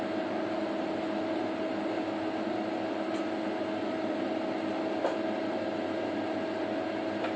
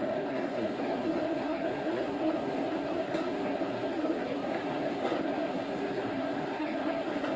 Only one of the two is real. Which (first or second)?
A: first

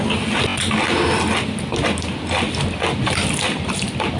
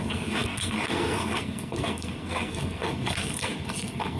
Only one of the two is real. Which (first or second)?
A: first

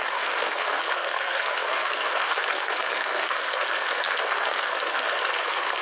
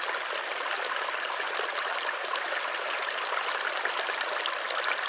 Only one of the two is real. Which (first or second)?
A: second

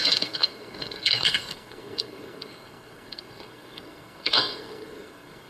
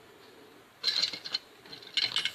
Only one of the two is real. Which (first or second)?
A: second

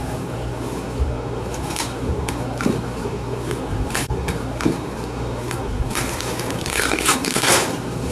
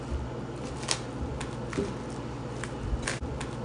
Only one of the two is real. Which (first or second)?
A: second